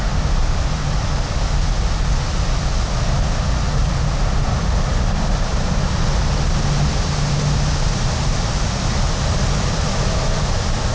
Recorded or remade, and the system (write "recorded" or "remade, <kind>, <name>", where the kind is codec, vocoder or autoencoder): recorded